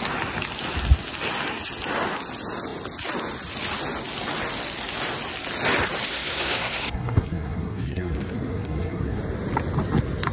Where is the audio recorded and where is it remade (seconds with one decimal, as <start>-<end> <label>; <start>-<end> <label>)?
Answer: 0.0-6.1 recorded; 6.1-9.2 remade; 9.2-10.3 recorded